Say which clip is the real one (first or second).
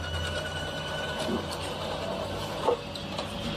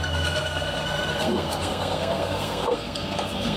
first